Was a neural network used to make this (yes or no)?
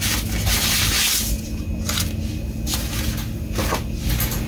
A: no